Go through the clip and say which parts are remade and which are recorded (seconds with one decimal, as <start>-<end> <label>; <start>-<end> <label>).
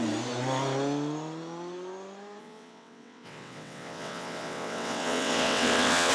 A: 0.0-2.4 recorded; 2.4-6.1 remade